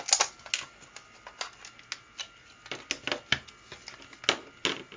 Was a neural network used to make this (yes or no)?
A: no